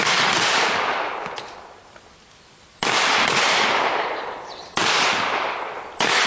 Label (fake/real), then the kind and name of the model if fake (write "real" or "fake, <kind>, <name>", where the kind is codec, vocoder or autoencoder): real